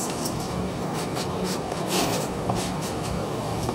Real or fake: fake